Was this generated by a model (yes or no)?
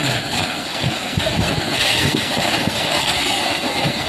yes